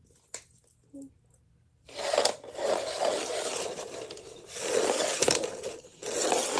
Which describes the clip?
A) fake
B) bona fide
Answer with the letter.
B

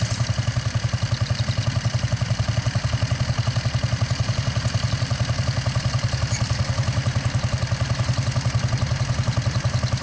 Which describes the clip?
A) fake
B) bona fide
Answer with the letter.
B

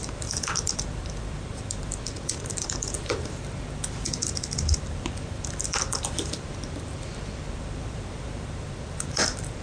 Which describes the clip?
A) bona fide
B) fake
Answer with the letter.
B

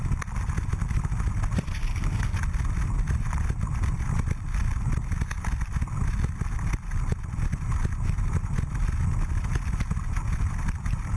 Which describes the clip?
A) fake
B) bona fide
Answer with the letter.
B